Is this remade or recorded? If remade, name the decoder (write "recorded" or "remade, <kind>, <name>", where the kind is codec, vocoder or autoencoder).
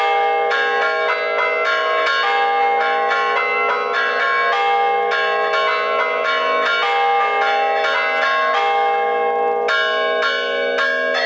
recorded